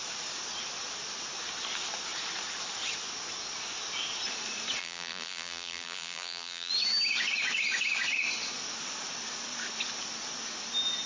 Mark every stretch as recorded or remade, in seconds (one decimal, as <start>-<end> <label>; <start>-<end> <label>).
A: 0.0-4.8 recorded; 4.8-6.7 remade; 6.7-11.1 recorded